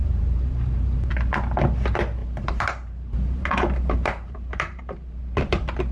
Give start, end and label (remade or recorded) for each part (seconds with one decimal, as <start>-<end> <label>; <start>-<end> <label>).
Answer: 0.0-1.1 remade; 1.1-2.2 recorded; 2.2-5.2 remade; 5.2-5.9 recorded